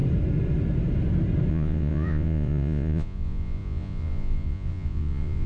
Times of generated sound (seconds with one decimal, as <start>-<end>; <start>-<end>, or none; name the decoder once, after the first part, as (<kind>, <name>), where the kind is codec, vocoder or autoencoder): 1.5-5.5 (vocoder, Vocos)